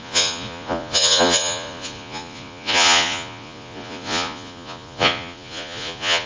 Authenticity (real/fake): fake